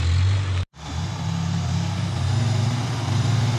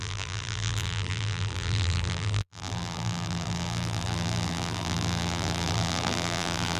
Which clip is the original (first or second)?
first